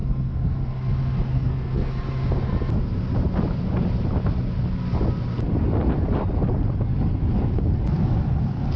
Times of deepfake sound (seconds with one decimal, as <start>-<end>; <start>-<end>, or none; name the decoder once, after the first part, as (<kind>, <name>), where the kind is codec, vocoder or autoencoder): 0.0-0.8 (codec, SNAC); 1.3-1.9